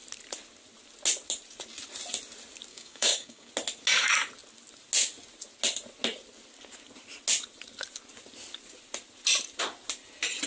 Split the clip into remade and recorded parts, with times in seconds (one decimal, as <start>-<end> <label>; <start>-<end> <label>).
0.0-2.7 recorded; 2.7-3.5 remade; 3.5-10.5 recorded